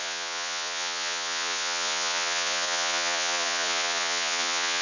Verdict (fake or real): fake